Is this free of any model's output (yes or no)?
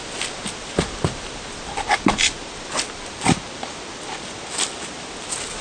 yes